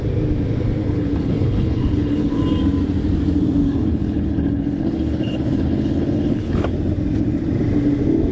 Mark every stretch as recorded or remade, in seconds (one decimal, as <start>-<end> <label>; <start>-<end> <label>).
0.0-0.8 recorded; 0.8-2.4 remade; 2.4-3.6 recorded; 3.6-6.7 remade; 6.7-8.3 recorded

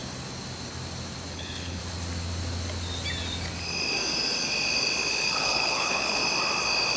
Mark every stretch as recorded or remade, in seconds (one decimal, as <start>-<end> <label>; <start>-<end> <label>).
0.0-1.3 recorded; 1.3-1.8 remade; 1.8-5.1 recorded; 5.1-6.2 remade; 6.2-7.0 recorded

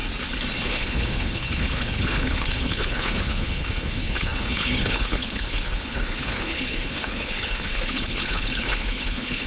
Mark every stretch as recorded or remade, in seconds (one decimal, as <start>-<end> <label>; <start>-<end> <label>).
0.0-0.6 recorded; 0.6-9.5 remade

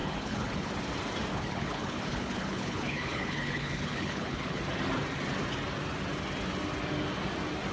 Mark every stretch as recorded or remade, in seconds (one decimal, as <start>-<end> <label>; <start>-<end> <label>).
0.0-0.7 remade; 0.7-1.3 recorded; 1.3-4.6 remade; 4.6-7.7 recorded

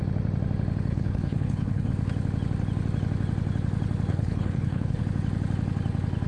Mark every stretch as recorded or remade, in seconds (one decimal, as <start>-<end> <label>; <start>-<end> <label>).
0.0-0.9 recorded; 0.9-1.9 remade; 1.9-4.1 recorded; 4.1-5.0 remade; 5.0-6.3 recorded